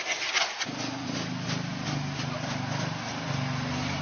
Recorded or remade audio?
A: recorded